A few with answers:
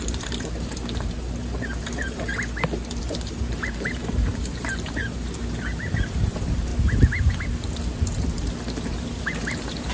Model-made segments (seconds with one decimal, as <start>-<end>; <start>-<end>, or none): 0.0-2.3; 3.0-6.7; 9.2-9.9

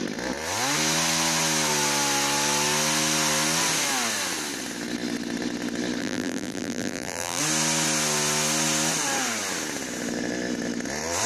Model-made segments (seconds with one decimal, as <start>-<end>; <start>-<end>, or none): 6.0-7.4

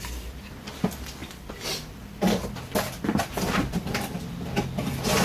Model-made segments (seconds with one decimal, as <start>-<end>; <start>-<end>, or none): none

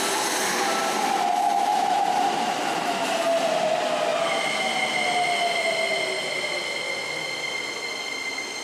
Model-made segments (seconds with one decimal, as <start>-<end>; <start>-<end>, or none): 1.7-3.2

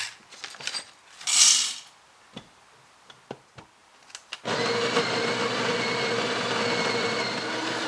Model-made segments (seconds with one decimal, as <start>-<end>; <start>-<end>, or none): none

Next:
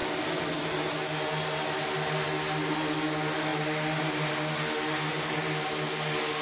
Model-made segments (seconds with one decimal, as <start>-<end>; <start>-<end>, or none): none

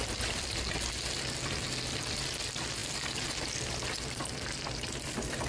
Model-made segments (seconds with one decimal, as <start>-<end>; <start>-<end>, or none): none